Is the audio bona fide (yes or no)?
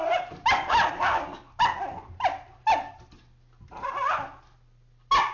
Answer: yes